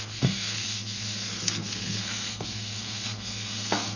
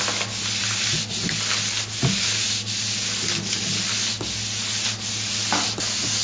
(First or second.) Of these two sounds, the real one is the second